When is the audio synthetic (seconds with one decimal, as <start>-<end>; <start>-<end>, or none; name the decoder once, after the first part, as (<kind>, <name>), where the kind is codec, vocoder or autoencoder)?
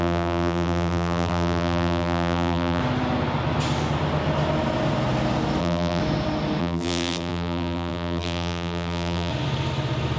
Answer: 0.0-2.8 (vocoder, BigVGAN v2); 5.6-6.0; 6.6-9.3